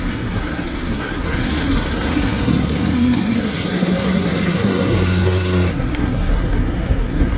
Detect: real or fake fake